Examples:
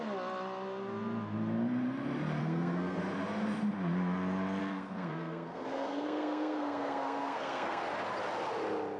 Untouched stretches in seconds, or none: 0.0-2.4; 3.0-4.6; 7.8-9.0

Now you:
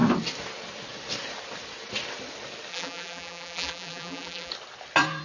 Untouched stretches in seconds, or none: 0.0-2.7; 4.5-5.2

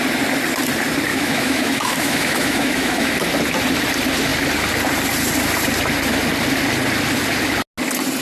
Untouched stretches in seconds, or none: 0.0-1.1; 3.1-8.2

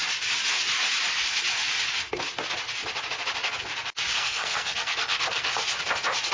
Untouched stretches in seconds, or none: 0.0-4.1; 5.5-6.3